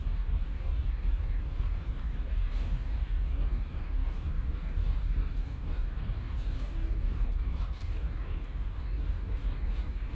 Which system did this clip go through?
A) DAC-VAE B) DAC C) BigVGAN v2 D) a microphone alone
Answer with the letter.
B